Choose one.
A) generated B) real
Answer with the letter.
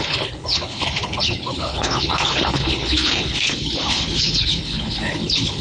A